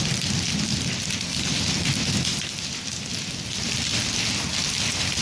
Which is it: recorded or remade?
recorded